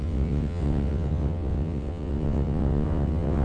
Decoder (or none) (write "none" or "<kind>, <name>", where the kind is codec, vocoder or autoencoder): vocoder, WaveNeXt